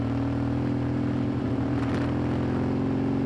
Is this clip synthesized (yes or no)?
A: no